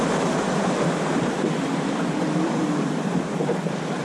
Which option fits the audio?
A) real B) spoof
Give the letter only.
B